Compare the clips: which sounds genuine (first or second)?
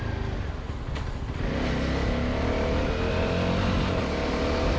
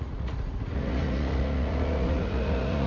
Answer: first